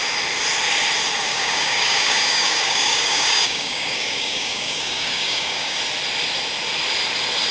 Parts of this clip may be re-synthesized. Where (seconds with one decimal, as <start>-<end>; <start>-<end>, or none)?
1.3-5.8